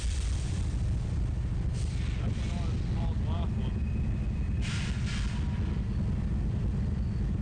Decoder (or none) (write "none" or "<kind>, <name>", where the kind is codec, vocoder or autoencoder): none